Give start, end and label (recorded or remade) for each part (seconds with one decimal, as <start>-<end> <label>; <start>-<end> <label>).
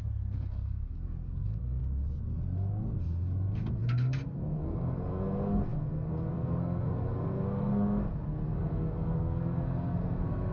0.0-1.8 remade; 1.8-3.0 recorded; 3.0-10.5 remade